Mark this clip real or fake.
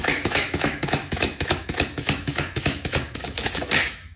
fake